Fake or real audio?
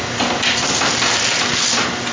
real